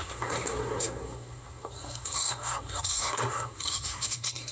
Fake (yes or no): yes